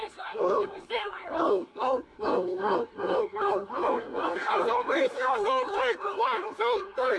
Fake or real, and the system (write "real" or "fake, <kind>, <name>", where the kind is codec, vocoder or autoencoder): fake, codec, SNAC